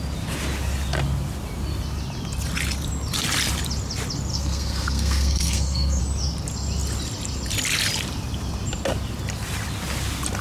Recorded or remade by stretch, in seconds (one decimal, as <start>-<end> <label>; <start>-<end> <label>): 0.0-4.3 recorded; 4.3-6.0 remade; 6.0-10.4 recorded